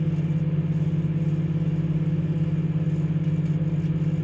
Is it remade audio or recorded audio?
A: recorded